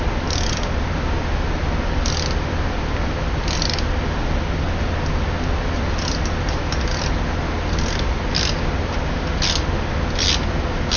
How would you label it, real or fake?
real